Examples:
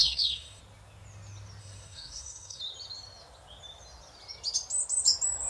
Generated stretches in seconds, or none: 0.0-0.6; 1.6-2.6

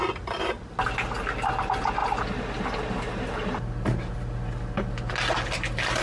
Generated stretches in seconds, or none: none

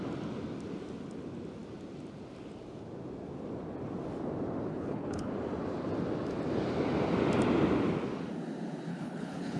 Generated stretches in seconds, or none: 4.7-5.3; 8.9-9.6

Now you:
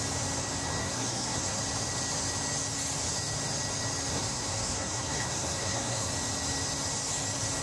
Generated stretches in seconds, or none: 0.8-1.6; 4.1-6.1

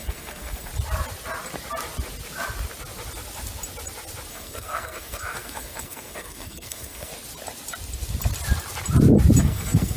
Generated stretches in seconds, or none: 0.0-0.7; 4.3-7.1; 9.4-10.0